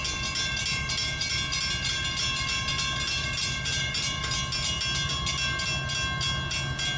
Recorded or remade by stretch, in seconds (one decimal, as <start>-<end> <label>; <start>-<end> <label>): 0.0-7.0 recorded